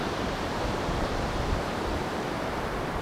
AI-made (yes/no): yes